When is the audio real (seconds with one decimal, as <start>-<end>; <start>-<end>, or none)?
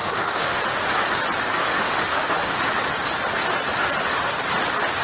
0.6-1.6; 2.6-5.0